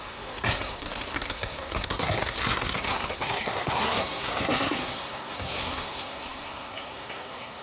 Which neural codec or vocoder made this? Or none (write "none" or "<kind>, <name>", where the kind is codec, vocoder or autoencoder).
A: codec, SNAC